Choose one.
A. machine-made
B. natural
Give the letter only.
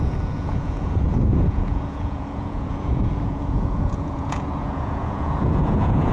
A